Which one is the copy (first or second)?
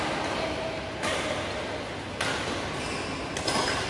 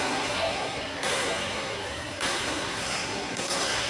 second